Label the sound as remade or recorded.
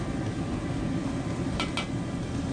recorded